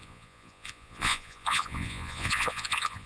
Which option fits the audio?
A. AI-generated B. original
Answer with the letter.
A